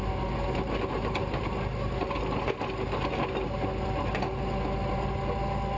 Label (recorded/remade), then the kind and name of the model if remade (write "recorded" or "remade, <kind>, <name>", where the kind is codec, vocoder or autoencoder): recorded